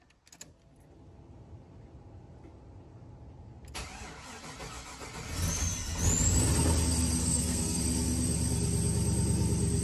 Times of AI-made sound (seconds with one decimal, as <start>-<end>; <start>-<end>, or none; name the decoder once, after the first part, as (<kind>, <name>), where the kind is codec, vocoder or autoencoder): 7.2-7.8 (codec, SNAC)